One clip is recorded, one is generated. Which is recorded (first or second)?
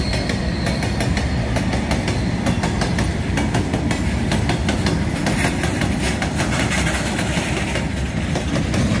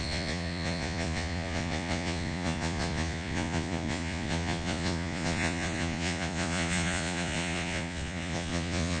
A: first